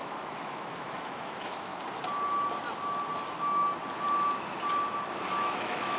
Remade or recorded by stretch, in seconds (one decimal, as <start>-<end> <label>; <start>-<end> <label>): 0.0-1.7 remade; 1.7-5.3 recorded; 5.3-6.0 remade